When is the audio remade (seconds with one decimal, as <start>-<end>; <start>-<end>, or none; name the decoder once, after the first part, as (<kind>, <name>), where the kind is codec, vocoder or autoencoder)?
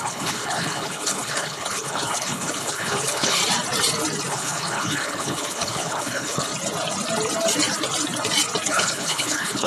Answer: 0.0-3.4 (codec, HILCodec); 4.3-6.5; 8.7-9.7